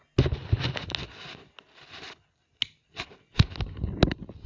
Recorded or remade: recorded